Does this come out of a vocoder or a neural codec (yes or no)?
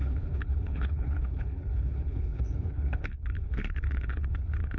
yes